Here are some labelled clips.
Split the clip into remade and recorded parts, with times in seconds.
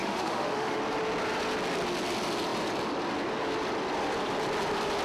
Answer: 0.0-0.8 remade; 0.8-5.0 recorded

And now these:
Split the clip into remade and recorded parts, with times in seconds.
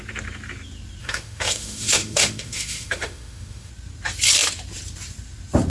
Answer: 0.0-1.0 recorded; 1.0-3.7 remade; 3.7-5.7 recorded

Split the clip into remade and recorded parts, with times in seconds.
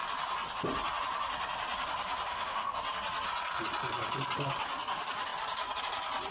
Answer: 0.0-2.3 recorded; 2.3-2.8 remade; 2.8-6.3 recorded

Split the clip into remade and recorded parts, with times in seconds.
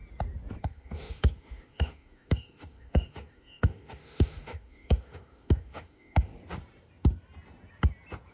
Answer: 0.0-0.6 recorded; 0.6-6.3 remade; 6.3-8.3 recorded